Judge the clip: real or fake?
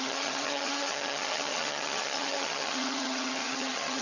fake